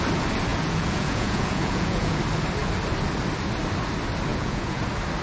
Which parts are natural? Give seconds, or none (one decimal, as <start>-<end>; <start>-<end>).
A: 0.0-0.5; 2.2-4.3; 4.8-5.2